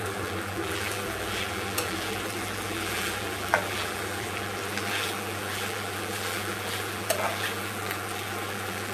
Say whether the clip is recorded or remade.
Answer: remade